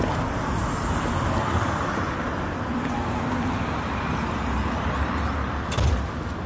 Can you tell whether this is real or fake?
real